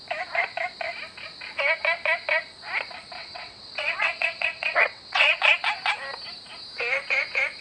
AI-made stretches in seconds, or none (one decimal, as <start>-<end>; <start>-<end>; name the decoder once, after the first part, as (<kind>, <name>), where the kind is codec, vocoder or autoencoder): 3.2-5.4 (vocoder, WaveNeXt)